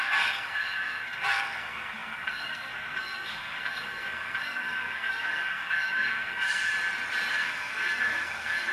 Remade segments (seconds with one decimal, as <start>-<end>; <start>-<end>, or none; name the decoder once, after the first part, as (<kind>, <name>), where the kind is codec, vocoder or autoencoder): 0.0-6.7 (codec, SNAC); 7.3-8.7